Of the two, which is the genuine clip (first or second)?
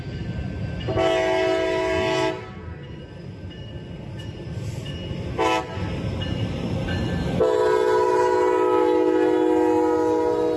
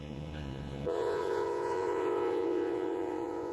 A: first